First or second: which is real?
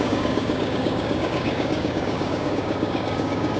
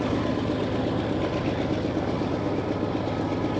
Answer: second